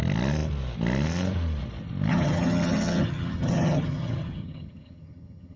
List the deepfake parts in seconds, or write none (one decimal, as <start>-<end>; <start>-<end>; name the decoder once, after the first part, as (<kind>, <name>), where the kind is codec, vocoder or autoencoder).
2.1-5.6 (vocoder, HiFi-GAN)